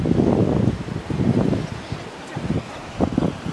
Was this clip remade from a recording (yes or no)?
no